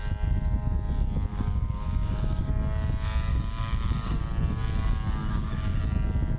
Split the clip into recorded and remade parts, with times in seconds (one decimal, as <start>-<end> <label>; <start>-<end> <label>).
0.0-1.3 recorded; 1.3-2.5 remade; 2.5-3.3 recorded; 3.3-4.2 remade; 4.2-5.2 recorded; 5.2-5.8 remade; 5.8-6.4 recorded